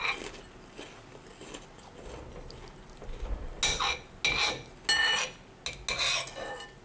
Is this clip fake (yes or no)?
no